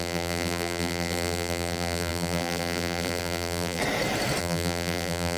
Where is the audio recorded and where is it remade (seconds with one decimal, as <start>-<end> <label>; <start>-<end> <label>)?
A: 0.0-3.8 remade; 3.8-4.4 recorded; 4.4-5.4 remade